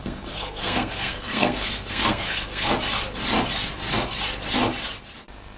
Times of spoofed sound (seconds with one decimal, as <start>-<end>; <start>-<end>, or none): 0.0-2.7